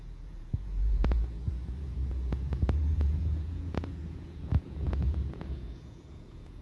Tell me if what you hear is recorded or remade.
remade